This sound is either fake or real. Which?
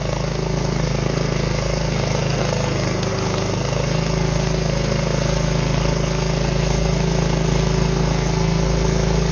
fake